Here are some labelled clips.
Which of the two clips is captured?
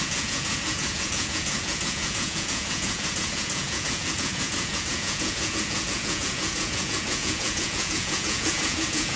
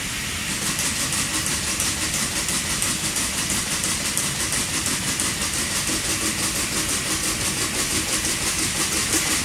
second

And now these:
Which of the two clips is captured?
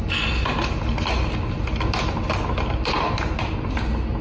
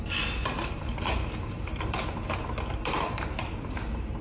first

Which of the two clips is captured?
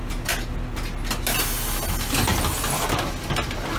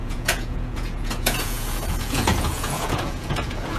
first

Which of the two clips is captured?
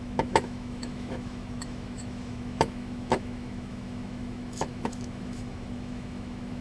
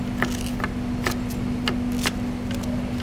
second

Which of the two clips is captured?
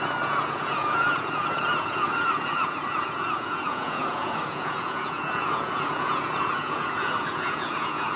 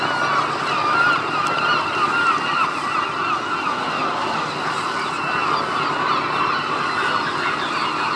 second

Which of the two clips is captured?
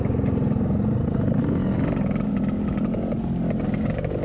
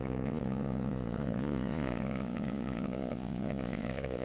first